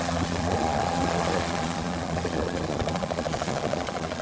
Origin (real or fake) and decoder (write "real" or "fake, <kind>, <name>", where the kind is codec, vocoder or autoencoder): fake, vocoder, Vocos